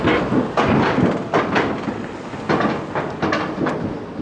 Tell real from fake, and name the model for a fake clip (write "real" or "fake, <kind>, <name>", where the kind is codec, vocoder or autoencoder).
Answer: real